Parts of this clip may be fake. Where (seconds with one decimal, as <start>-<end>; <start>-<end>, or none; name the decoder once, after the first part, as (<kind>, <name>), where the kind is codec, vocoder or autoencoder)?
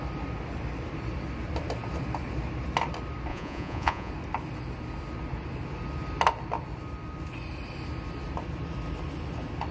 3.3-4.1 (vocoder, Vocos)